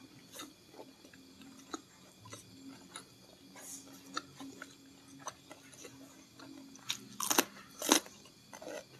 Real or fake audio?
real